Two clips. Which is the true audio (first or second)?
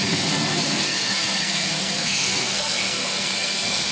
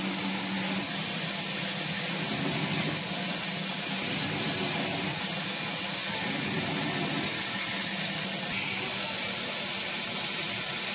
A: second